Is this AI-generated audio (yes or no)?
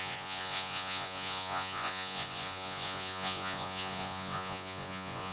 yes